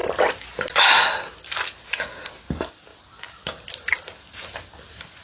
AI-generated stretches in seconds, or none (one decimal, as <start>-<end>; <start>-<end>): none